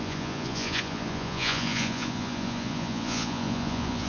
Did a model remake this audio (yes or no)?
yes